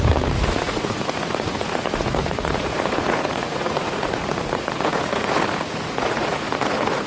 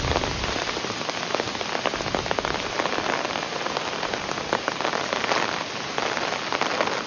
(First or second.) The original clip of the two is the second